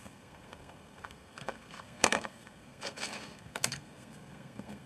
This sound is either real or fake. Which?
fake